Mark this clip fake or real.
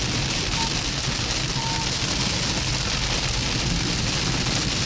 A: real